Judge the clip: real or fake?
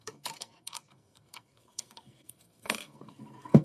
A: fake